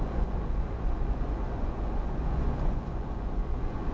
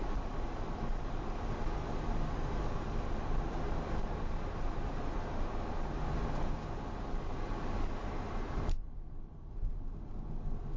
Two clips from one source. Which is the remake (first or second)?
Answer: first